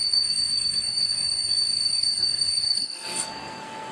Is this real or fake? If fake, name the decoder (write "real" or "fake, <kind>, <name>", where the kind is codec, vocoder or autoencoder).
fake, codec, SNAC